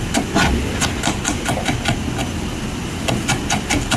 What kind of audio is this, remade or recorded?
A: recorded